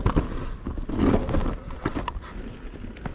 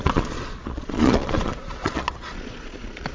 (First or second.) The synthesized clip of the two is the second